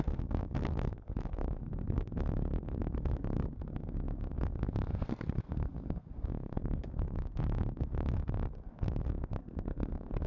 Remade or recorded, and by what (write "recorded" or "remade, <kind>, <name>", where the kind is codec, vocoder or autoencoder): remade, codec, SNAC